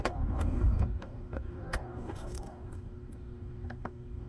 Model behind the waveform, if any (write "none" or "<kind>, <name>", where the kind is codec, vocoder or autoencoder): codec, DAC